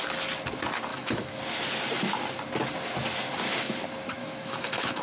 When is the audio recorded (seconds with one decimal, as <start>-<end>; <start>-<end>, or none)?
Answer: 0.0-0.9; 1.4-4.2